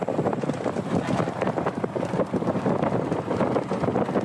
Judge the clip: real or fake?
real